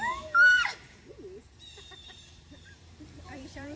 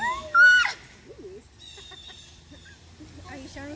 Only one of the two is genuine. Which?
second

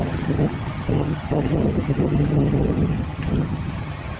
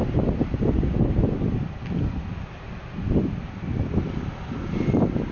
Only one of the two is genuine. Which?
second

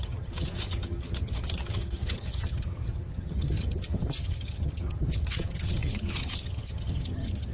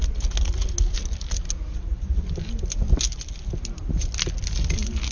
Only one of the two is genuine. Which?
second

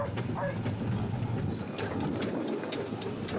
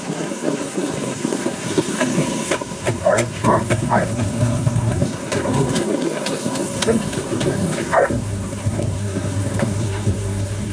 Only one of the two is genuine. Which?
first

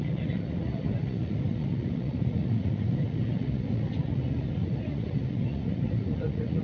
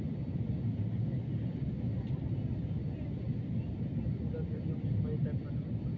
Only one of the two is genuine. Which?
second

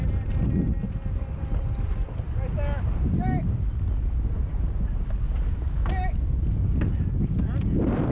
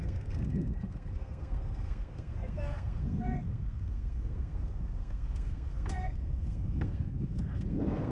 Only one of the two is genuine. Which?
first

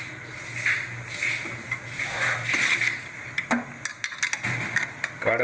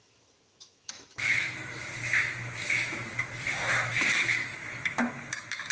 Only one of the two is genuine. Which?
first